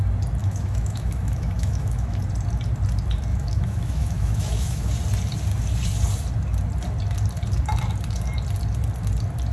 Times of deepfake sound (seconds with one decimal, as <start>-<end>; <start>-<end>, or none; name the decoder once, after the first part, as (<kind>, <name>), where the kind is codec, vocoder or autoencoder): 0.4-2.2 (autoencoder, DAC-VAE); 3.3-4.9